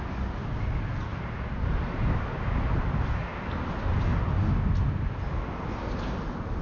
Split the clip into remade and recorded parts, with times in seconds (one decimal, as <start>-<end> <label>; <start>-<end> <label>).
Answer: 0.0-6.6 recorded